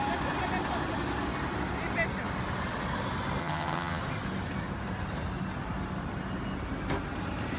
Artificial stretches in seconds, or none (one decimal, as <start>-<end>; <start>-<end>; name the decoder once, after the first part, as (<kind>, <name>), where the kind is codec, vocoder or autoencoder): 3.4-4.0 (vocoder, HiFi-GAN)